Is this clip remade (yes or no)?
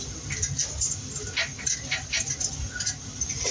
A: no